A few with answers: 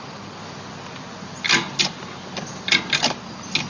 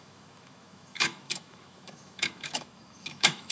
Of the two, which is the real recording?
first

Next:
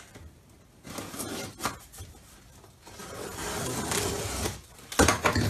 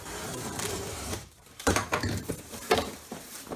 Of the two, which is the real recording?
first